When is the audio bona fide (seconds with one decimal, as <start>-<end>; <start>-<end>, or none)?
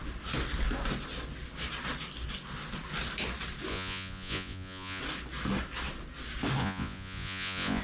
0.0-3.7; 5.0-6.6